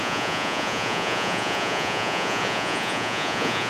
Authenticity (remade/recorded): remade